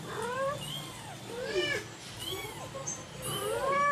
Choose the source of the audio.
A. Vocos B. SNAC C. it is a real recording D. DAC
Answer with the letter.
C